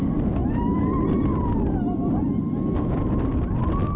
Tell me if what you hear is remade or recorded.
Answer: recorded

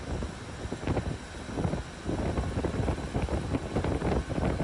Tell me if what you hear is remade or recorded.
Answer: recorded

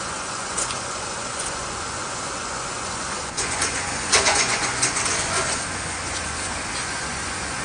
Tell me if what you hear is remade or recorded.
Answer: remade